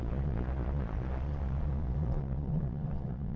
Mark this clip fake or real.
fake